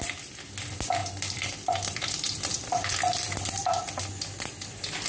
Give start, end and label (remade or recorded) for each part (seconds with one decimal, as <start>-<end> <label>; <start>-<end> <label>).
0.0-1.0 recorded; 1.0-4.0 remade; 4.0-5.1 recorded